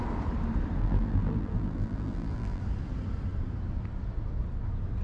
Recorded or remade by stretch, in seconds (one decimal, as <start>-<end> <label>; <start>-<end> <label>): 0.0-0.8 recorded; 0.8-2.6 remade; 2.6-5.0 recorded